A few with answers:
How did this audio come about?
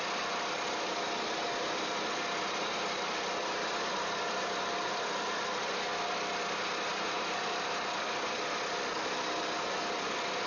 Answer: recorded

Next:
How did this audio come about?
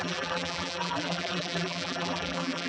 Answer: remade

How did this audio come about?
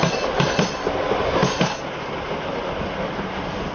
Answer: recorded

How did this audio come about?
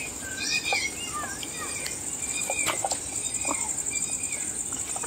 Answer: recorded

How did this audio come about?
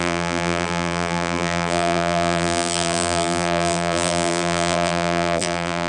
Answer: remade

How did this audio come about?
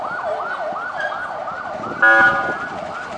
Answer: recorded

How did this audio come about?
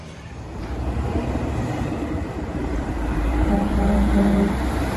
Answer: remade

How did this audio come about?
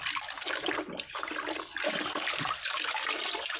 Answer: recorded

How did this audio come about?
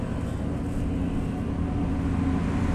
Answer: recorded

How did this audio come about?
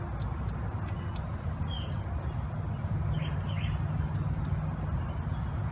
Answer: recorded